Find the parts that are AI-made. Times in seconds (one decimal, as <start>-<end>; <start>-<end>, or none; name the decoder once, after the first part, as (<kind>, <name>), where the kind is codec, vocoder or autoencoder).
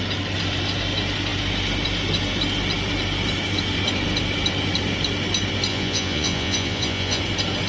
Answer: 5.7-7.2 (vocoder, Vocos)